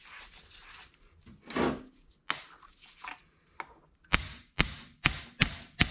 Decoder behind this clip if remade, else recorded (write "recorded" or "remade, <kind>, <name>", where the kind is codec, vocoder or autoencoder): recorded